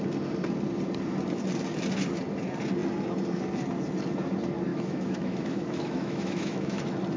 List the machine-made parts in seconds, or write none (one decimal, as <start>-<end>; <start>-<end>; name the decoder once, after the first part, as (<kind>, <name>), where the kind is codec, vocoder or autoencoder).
4.7-6.8 (autoencoder, DAC-VAE)